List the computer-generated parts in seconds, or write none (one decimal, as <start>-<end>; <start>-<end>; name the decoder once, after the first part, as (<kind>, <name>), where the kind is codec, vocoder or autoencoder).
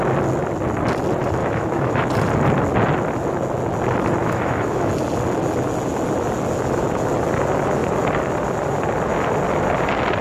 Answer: 1.4-2.1 (autoencoder, DAC-VAE); 4.2-4.9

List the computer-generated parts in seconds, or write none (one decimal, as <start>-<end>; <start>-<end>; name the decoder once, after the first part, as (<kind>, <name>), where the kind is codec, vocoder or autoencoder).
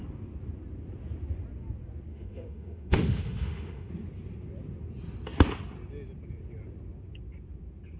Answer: 2.1-3.9 (autoencoder, DAC-VAE)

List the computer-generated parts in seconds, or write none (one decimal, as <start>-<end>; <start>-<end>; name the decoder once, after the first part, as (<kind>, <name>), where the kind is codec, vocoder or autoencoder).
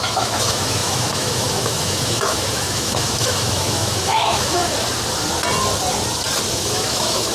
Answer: 0.0-4.6 (autoencoder, DAC-VAE); 6.5-7.3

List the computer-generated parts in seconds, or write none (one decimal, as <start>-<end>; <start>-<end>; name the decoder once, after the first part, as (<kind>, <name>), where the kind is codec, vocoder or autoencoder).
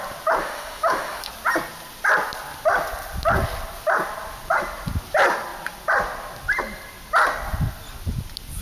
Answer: 0.4-1.3 (autoencoder, DAC-VAE)